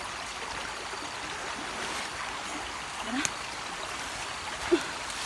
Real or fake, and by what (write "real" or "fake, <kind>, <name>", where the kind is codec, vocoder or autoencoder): real